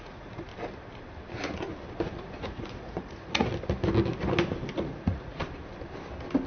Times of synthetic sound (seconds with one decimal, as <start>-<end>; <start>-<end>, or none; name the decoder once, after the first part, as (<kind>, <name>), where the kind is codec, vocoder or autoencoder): 0.0-0.5 (vocoder, Vocos); 2.4-3.5; 4.7-5.4